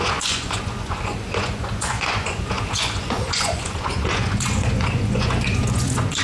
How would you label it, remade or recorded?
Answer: remade